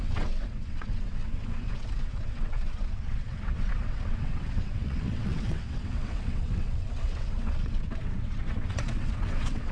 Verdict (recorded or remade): remade